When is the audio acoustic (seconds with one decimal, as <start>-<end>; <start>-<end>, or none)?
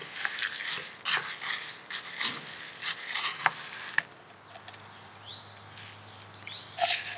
0.0-7.2